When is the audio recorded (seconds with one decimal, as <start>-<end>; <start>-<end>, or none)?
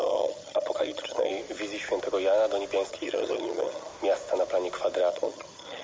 1.3-2.9; 3.9-5.1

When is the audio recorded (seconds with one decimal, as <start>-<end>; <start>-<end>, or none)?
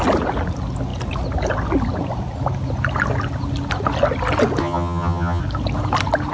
0.0-4.6; 5.4-6.3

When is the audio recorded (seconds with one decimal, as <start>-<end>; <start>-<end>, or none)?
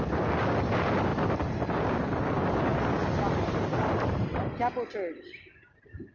0.0-6.1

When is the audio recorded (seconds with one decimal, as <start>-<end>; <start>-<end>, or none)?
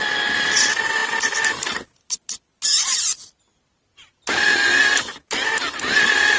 0.0-6.4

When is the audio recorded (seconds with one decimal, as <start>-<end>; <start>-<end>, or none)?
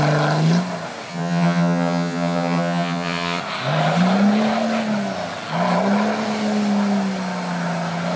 0.0-1.1; 3.4-8.2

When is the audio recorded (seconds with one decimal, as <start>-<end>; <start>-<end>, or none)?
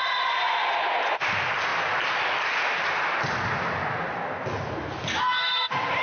0.0-6.0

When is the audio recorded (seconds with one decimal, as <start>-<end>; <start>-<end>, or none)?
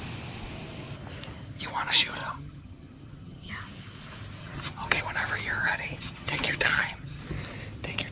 0.0-2.2; 3.5-4.4; 5.0-5.6; 7.2-8.1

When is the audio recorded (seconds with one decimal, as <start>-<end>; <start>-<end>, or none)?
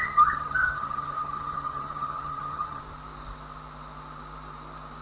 2.8-5.0